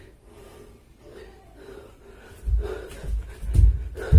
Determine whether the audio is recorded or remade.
recorded